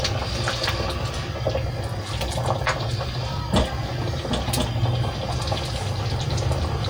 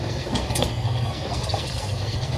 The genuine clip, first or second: first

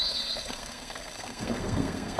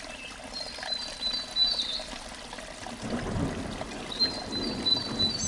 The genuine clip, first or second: second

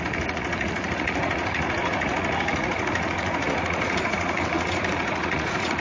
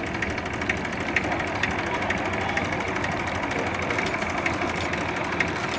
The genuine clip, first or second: second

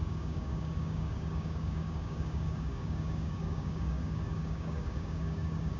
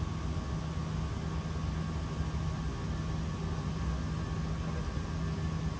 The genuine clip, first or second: second